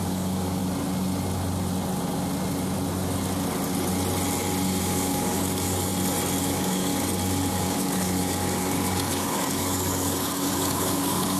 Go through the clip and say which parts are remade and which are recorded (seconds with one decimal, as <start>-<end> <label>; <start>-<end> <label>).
0.0-0.6 remade; 0.6-4.8 recorded; 4.8-5.9 remade; 5.9-6.4 recorded; 6.4-6.9 remade; 6.9-7.5 recorded; 7.5-11.4 remade